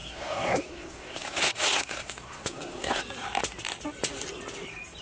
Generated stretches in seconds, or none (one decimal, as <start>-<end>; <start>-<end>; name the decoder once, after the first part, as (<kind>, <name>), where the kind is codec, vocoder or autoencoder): 0.0-3.0 (codec, SNAC)